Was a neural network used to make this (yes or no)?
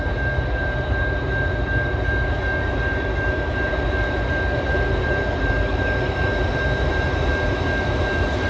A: yes